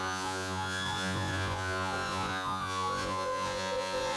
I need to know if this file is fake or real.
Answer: fake